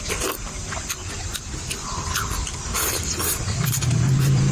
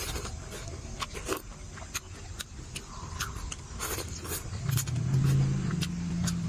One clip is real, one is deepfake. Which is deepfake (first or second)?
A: first